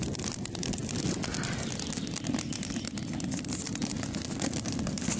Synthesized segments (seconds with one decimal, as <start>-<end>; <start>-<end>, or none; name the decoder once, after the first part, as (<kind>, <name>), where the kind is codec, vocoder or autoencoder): none